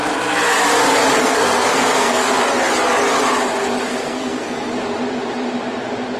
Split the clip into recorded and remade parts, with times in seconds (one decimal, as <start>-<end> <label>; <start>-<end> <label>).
0.0-1.2 recorded; 1.2-2.3 remade; 2.3-3.9 recorded; 3.9-4.7 remade; 4.7-6.2 recorded